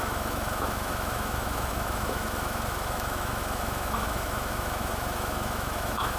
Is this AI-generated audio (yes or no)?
yes